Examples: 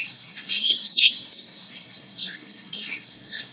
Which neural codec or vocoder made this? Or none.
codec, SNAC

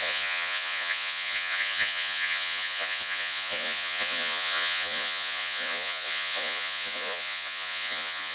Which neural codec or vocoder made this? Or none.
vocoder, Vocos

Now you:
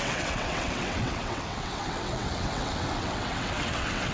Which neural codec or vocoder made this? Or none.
vocoder, WaveNeXt